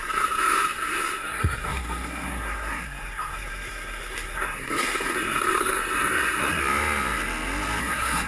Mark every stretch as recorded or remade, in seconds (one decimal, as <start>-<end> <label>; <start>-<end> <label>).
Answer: 0.0-6.6 remade; 6.6-7.8 recorded; 7.8-8.3 remade